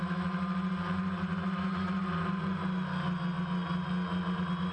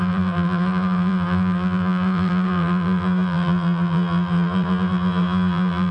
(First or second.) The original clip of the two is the first